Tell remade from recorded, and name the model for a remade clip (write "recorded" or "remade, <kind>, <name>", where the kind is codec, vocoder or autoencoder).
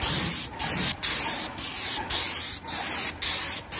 recorded